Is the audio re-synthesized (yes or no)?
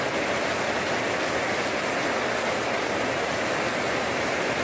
no